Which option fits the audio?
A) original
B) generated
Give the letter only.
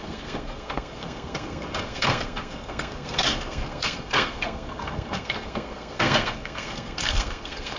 B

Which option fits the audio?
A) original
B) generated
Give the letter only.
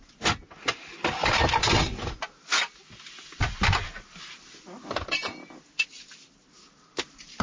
A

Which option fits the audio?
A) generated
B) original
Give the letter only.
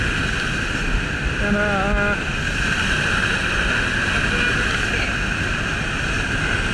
B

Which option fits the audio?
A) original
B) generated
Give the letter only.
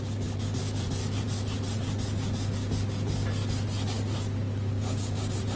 A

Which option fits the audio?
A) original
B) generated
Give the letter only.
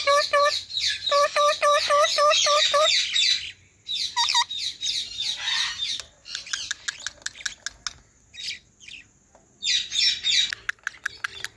A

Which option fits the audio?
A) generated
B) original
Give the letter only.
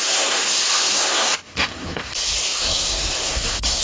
A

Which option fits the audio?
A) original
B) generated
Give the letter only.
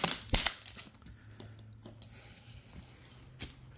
A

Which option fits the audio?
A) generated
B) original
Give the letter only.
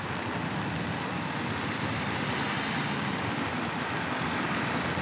B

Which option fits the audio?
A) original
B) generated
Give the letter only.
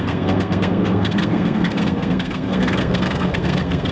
B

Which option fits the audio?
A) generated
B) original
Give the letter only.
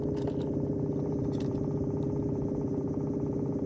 B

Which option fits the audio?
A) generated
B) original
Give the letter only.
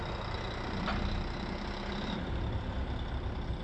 B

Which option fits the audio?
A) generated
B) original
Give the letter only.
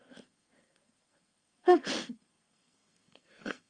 A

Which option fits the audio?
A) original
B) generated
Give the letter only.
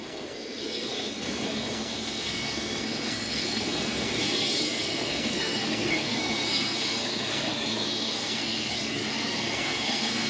B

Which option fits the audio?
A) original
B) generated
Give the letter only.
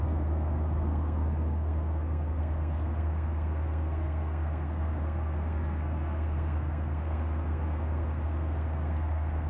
B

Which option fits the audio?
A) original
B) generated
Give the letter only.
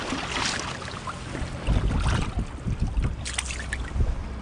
A